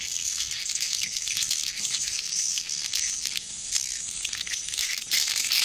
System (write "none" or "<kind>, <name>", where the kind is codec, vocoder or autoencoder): codec, SNAC